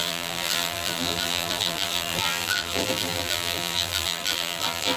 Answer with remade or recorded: remade